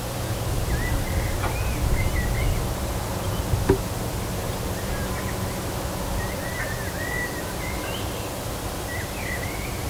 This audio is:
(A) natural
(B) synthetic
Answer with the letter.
A